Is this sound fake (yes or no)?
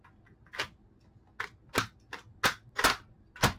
no